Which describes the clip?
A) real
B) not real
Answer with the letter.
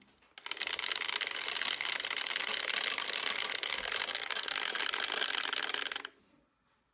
A